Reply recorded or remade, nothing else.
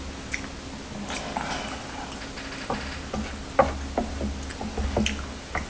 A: recorded